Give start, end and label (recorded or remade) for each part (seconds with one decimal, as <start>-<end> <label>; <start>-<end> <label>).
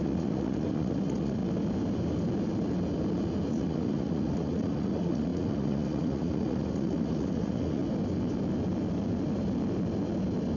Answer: 0.0-1.4 remade; 1.4-3.5 recorded; 3.5-7.8 remade; 7.8-10.6 recorded